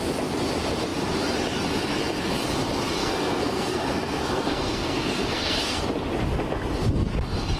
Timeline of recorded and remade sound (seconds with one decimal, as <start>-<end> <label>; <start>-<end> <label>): 0.0-3.0 recorded; 3.0-5.8 remade; 5.8-7.6 recorded